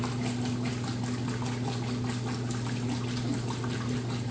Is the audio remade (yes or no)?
no